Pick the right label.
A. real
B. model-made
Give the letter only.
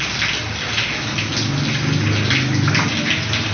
A